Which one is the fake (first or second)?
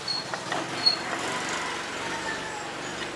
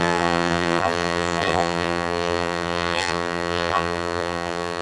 second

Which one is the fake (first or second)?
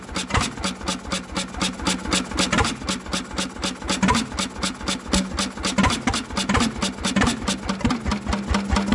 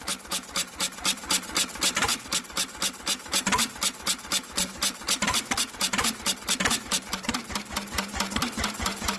second